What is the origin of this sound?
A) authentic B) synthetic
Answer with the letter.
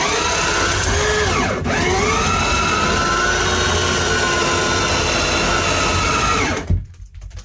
A